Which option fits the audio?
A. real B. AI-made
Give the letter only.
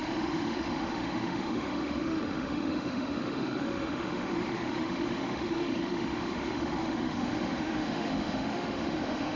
B